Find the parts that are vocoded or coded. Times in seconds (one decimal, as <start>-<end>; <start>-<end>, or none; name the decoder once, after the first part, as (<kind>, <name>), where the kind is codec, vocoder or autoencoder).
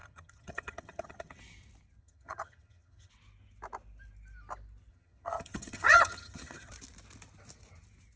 0.0-1.4 (vocoder, HiFi-GAN); 2.0-3.1; 4.9-6.7